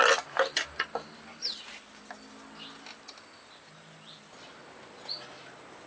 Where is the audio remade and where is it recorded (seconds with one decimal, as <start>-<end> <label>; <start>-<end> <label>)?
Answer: 0.0-5.9 recorded